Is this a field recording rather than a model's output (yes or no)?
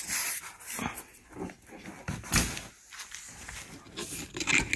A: yes